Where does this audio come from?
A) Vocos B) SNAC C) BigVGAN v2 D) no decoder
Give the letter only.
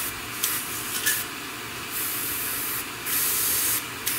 D